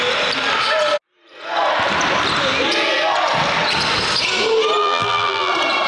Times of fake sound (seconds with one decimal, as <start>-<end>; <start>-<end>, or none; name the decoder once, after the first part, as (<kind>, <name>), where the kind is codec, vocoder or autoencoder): 4.8-5.5 (vocoder, BigVGAN v2)

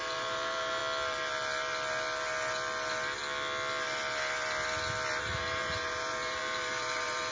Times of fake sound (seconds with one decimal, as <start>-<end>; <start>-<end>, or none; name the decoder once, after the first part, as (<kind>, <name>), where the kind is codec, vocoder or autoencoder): 0.0-0.8 (vocoder, BigVGAN v2); 5.2-7.3